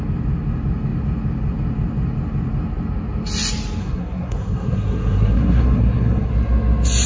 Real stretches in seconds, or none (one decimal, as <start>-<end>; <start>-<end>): 0.0-3.8; 6.3-7.1